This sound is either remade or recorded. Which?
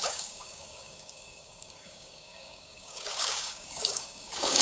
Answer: remade